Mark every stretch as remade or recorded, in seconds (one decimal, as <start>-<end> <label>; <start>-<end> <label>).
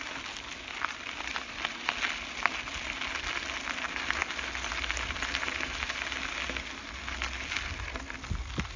0.0-8.8 recorded